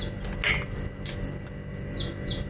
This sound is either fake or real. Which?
real